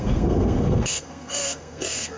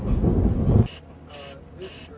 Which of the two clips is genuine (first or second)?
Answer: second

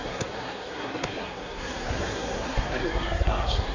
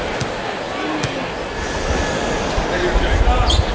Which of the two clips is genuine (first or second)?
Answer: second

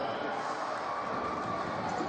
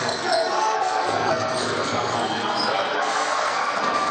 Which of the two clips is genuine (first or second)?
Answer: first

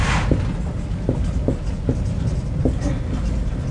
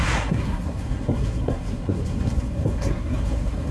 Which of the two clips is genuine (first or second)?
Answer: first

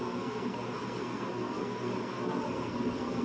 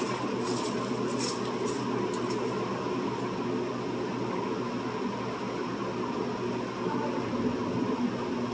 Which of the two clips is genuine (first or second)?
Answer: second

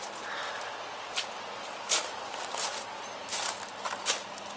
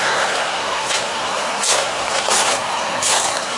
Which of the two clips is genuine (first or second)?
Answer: first